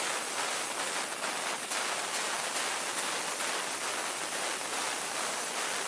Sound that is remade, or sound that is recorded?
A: recorded